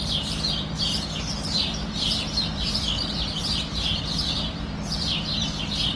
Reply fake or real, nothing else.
fake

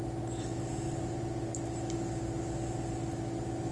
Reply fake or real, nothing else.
real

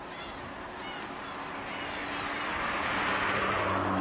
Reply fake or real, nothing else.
real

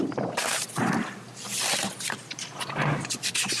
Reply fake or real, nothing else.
fake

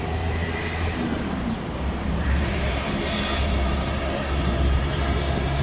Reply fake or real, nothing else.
fake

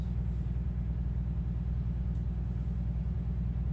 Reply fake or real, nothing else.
real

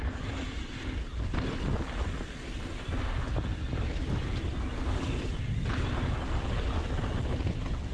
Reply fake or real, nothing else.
real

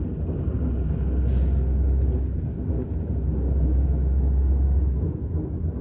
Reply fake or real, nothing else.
real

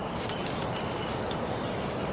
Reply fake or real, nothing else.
fake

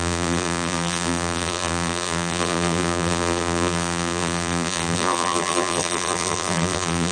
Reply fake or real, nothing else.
fake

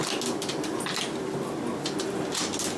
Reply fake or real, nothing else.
real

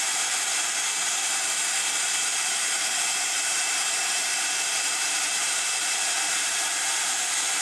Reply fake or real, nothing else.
fake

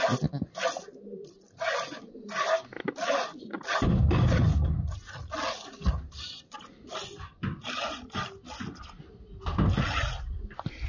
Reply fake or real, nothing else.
real